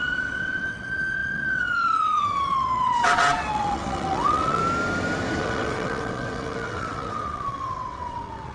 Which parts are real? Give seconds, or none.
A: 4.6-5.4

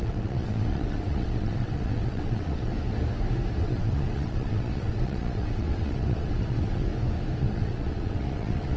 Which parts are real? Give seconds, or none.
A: 2.7-3.6; 6.9-7.4